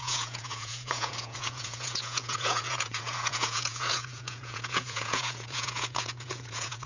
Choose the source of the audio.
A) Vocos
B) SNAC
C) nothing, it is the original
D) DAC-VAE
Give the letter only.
A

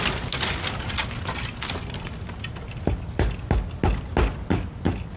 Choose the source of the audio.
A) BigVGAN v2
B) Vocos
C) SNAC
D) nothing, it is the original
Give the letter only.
D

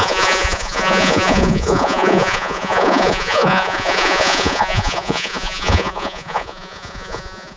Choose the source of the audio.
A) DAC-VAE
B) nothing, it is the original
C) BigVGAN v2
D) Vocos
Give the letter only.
D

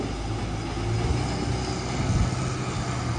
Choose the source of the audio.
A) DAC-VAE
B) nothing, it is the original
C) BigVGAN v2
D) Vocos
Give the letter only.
B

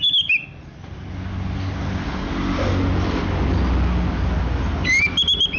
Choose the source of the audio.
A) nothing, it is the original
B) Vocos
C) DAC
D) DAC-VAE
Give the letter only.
A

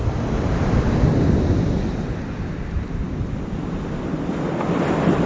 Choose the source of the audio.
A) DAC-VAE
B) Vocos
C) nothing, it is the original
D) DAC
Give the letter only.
C